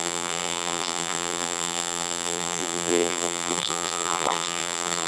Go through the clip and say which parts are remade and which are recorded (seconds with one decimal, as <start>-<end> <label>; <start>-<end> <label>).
0.0-5.1 remade